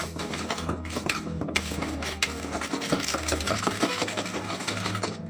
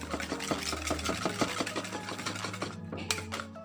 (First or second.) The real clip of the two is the second